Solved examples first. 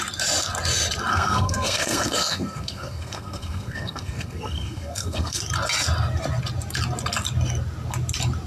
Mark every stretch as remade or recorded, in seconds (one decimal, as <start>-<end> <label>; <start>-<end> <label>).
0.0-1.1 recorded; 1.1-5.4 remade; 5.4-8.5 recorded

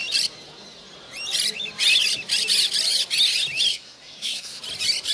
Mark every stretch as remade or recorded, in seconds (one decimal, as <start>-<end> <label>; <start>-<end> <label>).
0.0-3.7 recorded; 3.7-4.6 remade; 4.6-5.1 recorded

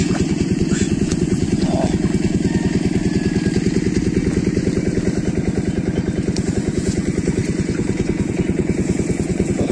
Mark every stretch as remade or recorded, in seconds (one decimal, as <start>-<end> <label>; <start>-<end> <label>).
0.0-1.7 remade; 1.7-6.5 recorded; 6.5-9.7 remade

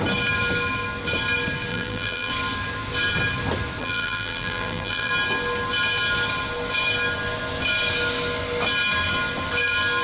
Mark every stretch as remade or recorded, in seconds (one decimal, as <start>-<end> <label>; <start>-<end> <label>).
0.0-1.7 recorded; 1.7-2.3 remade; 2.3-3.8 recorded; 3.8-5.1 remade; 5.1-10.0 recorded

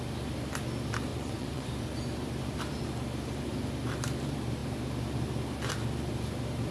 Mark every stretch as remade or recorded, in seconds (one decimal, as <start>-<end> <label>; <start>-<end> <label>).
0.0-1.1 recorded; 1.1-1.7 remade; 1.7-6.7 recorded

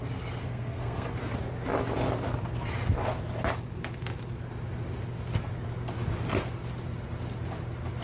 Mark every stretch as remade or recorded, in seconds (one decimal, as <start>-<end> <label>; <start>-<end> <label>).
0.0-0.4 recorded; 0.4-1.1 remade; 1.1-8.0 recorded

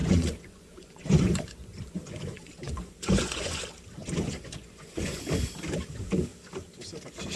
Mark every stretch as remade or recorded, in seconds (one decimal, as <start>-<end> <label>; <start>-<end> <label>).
0.0-3.6 remade; 3.6-4.0 recorded; 4.0-5.2 remade; 5.2-7.4 recorded

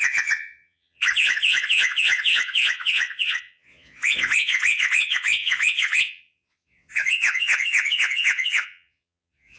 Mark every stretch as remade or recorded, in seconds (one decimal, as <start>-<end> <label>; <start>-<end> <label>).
0.0-9.6 remade